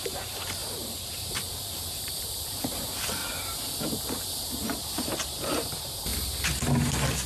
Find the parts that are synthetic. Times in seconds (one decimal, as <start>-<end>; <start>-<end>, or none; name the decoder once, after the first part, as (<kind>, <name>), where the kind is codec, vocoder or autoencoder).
0.0-3.2 (vocoder, BigVGAN v2); 4.6-6.1